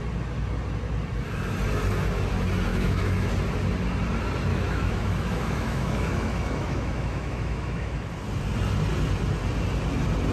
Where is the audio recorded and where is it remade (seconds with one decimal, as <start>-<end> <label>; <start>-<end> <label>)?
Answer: 0.0-2.7 recorded; 2.7-3.3 remade; 3.3-4.5 recorded; 4.5-8.1 remade; 8.1-10.3 recorded